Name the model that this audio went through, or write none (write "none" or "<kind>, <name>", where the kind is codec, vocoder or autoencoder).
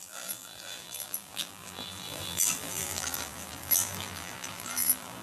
vocoder, BigVGAN v2